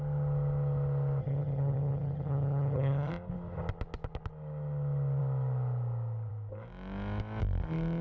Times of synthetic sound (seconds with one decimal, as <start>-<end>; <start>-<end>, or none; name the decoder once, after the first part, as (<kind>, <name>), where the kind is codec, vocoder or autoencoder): 1.2-3.1 (vocoder, HiFi-GAN)